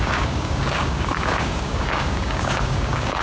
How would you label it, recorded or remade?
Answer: remade